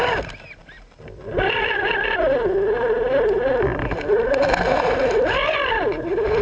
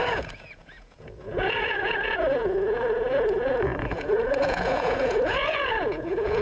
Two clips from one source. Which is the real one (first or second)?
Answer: first